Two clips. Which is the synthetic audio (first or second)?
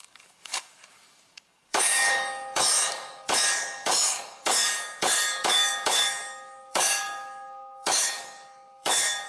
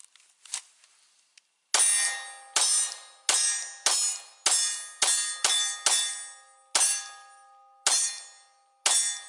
first